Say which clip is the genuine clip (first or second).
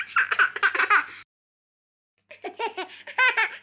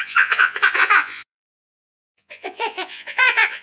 first